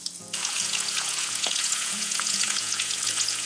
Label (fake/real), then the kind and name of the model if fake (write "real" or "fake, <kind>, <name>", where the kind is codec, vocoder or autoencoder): fake, vocoder, Vocos